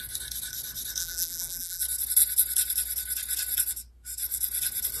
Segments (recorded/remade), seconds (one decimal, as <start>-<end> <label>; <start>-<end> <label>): 0.0-1.0 recorded; 1.0-1.8 remade; 1.8-5.0 recorded